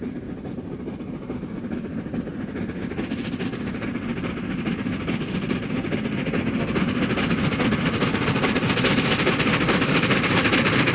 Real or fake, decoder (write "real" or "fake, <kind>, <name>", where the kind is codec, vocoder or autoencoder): real